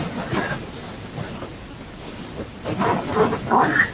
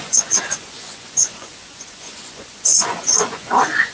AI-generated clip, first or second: second